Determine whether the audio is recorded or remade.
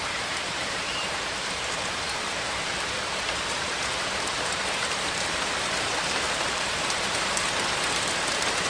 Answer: remade